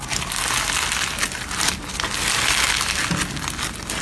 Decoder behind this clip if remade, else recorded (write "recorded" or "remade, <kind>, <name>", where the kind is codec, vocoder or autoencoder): recorded